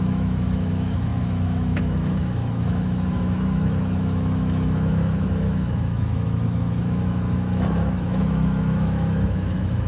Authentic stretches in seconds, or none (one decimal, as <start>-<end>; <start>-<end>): none